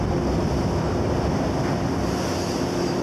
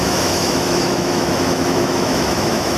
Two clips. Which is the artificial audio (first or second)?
second